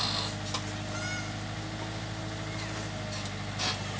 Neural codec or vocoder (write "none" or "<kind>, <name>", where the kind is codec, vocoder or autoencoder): none